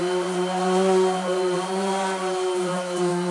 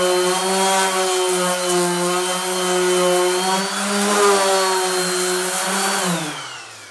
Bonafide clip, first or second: second